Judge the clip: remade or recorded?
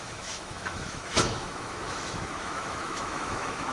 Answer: remade